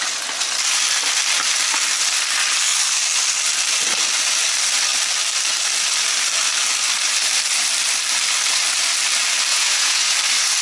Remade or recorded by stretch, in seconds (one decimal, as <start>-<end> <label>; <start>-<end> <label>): 0.0-9.5 recorded; 9.5-10.1 remade; 10.1-10.6 recorded